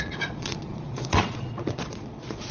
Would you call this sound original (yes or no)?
no